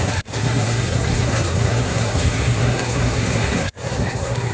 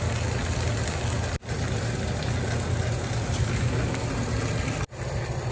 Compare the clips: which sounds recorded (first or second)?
second